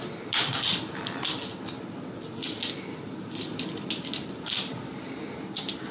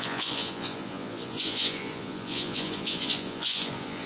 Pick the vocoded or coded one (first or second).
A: second